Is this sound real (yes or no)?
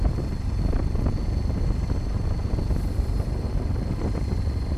yes